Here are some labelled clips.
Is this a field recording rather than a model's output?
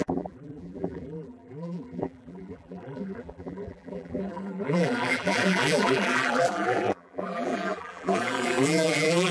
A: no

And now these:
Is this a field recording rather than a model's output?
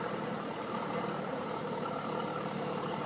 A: no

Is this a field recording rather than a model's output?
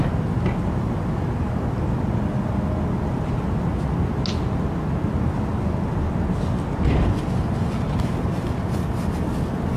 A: yes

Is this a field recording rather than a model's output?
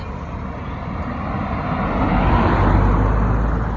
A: yes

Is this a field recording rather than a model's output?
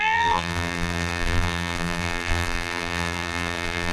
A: no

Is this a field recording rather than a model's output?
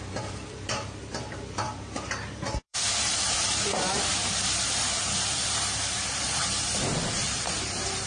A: no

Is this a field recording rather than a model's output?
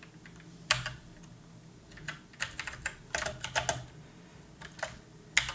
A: yes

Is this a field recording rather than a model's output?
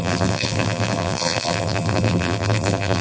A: no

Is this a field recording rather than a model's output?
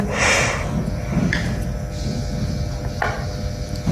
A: yes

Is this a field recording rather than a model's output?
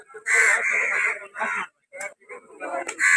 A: no